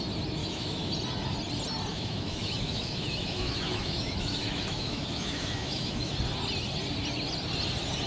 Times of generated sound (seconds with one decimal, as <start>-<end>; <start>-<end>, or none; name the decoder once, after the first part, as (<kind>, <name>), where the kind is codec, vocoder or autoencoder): 0.4-0.9 (autoencoder, DAC-VAE); 1.9-6.1